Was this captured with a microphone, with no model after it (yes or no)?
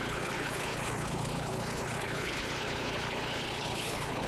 no